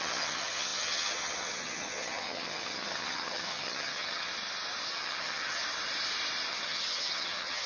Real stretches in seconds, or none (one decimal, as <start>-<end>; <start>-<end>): 4.3-4.9; 5.6-6.5